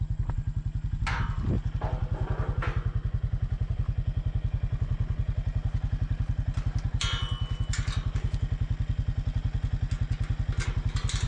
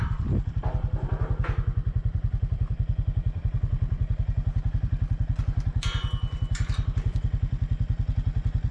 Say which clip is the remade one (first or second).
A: second